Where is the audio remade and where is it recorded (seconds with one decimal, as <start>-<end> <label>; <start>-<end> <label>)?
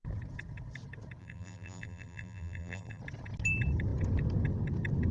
0.0-1.2 recorded; 1.2-3.0 remade; 3.0-5.1 recorded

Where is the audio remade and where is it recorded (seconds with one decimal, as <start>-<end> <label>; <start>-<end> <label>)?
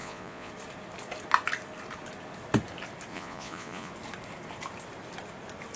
0.0-0.5 remade; 0.5-3.1 recorded; 3.1-3.9 remade; 3.9-5.8 recorded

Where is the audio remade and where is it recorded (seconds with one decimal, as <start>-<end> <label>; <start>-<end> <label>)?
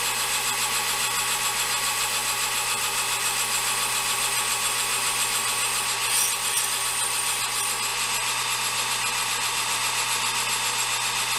0.0-11.4 recorded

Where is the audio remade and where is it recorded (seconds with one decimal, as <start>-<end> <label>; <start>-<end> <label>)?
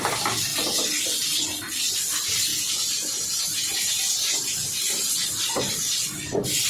0.0-6.7 recorded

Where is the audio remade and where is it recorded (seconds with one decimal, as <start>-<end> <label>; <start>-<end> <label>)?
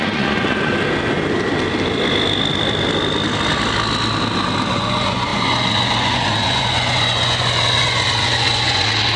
0.0-0.7 remade; 0.7-4.7 recorded; 4.7-9.2 remade